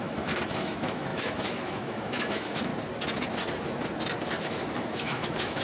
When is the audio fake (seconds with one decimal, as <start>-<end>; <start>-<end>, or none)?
0.0-2.7; 4.4-5.6